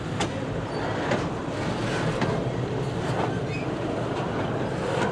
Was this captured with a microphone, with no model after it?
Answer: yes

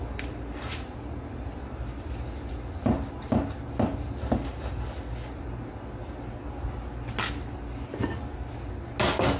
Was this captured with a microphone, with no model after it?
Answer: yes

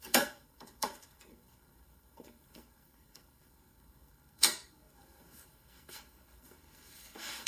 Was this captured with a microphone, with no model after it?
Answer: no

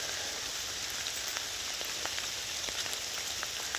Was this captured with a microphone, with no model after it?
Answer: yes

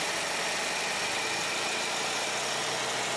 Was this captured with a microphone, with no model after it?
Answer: yes